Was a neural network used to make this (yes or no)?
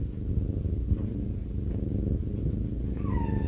no